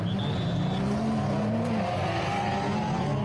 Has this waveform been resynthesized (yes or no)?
no